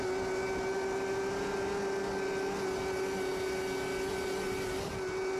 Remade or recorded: recorded